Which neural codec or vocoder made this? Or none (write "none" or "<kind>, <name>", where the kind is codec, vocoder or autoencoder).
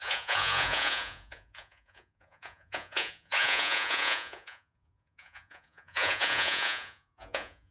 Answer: vocoder, Vocos